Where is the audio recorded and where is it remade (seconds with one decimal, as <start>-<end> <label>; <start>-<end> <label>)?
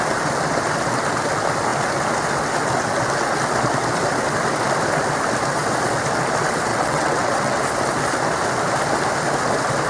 0.0-6.7 recorded; 6.7-7.6 remade; 7.6-9.9 recorded